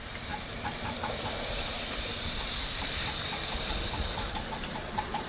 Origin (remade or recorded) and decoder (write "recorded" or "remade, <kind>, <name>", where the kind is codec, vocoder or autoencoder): remade, vocoder, BigVGAN v2